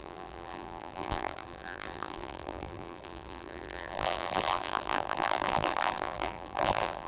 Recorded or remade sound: remade